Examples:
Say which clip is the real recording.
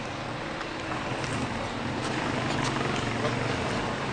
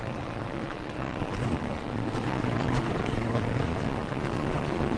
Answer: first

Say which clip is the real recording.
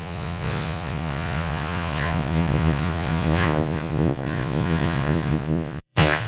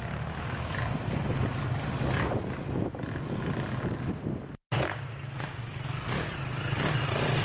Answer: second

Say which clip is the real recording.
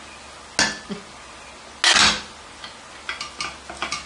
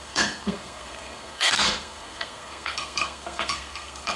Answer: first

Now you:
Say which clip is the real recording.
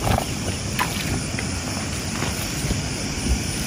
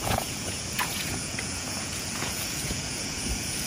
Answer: first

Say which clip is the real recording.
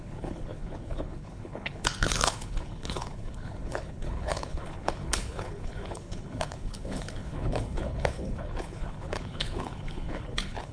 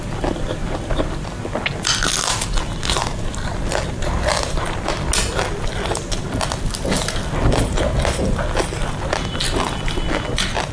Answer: second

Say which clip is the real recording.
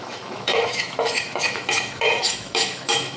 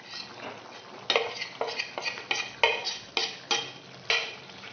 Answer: second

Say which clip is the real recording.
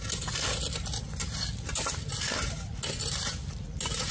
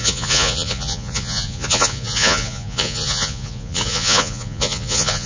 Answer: first